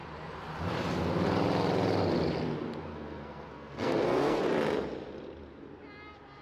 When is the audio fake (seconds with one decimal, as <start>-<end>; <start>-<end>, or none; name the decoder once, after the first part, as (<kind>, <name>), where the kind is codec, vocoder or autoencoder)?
2.9-4.4 (codec, SNAC)